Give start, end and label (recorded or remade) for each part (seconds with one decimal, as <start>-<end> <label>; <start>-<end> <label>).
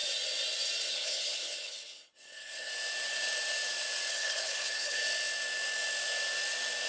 0.0-0.9 recorded; 0.9-2.7 remade; 2.7-4.1 recorded; 4.1-5.0 remade; 5.0-6.9 recorded